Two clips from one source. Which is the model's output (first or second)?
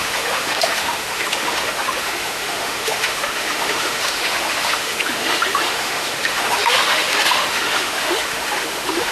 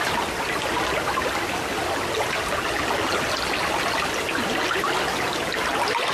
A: first